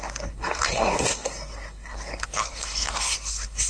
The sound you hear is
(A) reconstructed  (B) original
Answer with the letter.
A